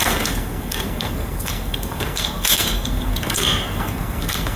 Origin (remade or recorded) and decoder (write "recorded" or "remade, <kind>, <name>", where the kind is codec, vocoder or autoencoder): remade, codec, SNAC